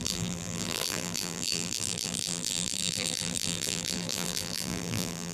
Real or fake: fake